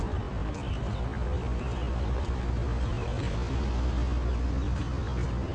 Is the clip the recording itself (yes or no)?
yes